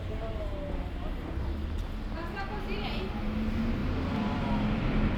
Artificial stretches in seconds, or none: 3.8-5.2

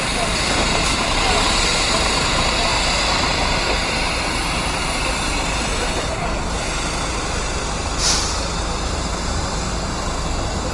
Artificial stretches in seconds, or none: 2.7-6.1

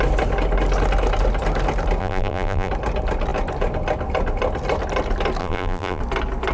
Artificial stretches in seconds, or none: 2.0-2.7; 5.4-6.0